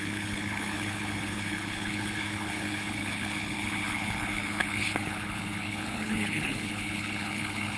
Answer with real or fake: fake